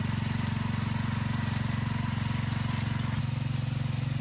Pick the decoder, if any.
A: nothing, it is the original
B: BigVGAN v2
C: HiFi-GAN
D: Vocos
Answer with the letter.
A